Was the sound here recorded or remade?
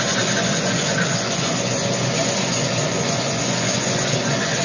remade